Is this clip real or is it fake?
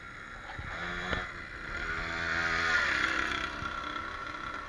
real